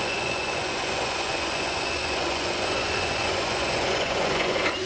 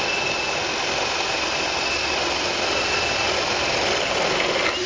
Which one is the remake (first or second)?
first